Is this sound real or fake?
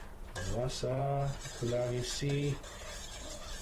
fake